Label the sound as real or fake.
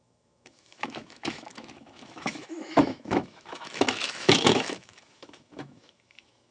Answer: fake